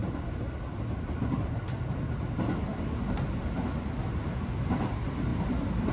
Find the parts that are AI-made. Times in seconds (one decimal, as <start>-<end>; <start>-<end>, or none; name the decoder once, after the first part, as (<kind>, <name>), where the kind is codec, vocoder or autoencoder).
none

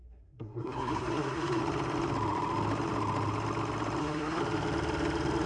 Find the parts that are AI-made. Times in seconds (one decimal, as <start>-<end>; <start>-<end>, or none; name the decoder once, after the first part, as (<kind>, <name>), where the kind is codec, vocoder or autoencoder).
0.0-1.6 (codec, SNAC); 4.0-4.4

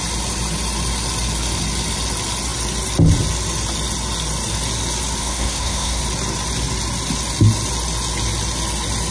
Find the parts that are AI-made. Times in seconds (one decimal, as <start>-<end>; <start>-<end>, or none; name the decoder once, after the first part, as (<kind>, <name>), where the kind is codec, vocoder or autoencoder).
5.2-6.0 (codec, SNAC)

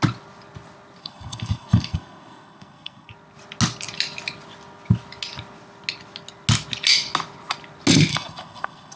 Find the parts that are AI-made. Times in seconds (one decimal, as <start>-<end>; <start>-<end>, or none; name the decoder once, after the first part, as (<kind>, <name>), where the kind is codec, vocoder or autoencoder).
1.0-3.1 (codec, SNAC); 8.1-9.0

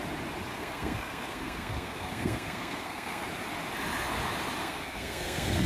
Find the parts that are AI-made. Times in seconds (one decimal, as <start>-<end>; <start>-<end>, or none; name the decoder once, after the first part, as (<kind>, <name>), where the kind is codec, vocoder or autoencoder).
0.5-3.3 (codec, SNAC); 4.6-5.7

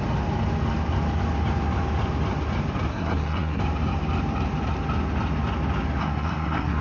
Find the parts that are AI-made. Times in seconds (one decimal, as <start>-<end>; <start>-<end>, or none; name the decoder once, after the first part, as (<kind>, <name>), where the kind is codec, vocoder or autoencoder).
2.9-3.6 (codec, SNAC); 6.0-6.8